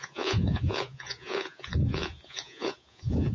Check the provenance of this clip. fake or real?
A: fake